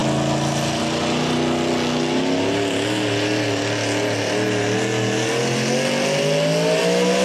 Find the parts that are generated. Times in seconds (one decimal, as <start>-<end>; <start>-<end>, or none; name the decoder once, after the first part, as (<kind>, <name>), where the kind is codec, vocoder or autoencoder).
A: none